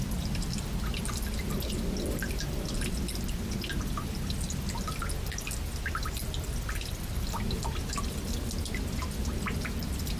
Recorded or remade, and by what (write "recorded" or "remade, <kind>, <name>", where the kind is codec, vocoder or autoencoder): recorded